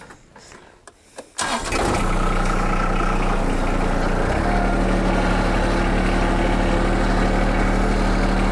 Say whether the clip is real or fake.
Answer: real